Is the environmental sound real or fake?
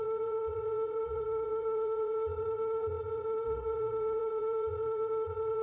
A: fake